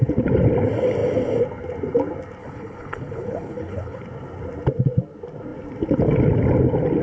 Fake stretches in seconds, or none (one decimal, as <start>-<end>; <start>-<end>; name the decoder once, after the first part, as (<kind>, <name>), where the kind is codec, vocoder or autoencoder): 2.4-4.0 (codec, HILCodec)